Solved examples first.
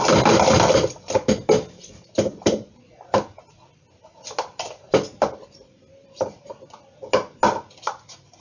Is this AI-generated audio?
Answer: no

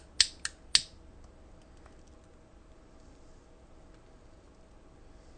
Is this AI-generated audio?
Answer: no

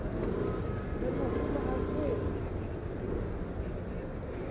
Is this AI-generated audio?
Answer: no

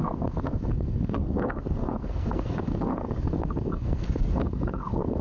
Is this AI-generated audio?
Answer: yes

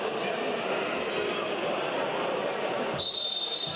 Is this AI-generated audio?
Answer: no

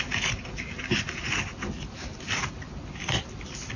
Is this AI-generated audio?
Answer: no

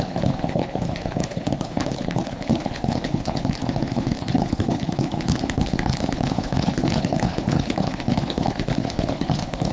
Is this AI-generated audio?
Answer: yes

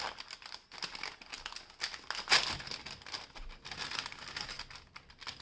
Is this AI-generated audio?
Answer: no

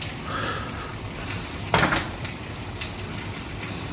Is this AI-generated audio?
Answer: yes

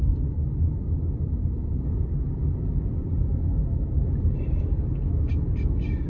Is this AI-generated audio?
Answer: no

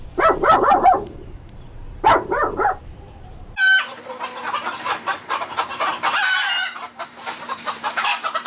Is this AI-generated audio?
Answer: yes